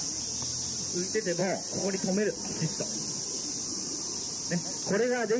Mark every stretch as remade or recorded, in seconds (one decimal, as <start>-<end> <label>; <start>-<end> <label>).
0.0-1.4 recorded; 1.4-3.0 remade; 3.0-3.7 recorded; 3.7-4.3 remade; 4.3-5.4 recorded